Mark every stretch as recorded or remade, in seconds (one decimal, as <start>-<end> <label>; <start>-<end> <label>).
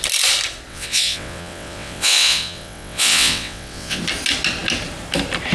0.0-0.7 recorded; 0.7-4.0 remade; 4.0-5.5 recorded